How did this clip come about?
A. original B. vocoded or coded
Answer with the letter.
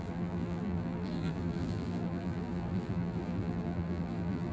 B